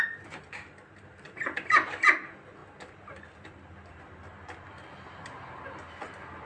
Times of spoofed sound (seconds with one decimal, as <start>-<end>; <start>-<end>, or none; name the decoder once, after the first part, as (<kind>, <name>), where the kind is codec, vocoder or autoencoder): none